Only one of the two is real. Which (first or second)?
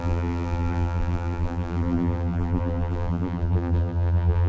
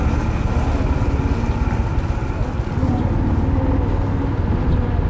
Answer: second